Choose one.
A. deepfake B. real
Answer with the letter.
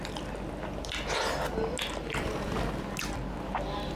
B